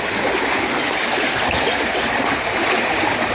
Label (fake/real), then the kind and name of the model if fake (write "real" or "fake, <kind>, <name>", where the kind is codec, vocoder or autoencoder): fake, vocoder, BigVGAN v2